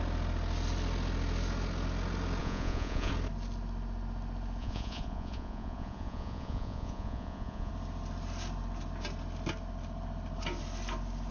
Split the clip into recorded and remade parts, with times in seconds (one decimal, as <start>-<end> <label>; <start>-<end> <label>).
0.0-2.4 recorded; 2.4-3.1 remade; 3.1-4.6 recorded; 4.6-7.7 remade; 7.7-11.3 recorded